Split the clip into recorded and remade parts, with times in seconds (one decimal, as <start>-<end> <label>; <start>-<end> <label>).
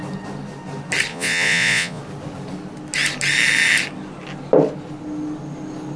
0.0-1.1 recorded; 1.1-2.0 remade; 2.0-6.0 recorded